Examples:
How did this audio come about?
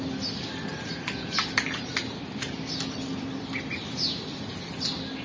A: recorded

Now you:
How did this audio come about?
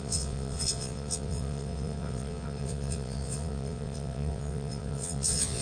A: remade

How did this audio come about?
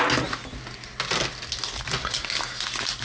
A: recorded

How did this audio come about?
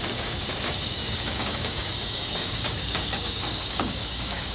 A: remade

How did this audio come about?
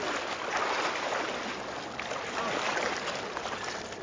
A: recorded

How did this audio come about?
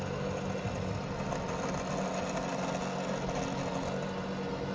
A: recorded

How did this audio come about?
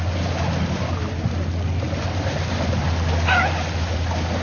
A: recorded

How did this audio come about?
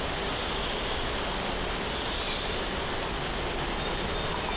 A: recorded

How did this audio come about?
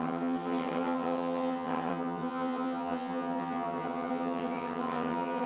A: remade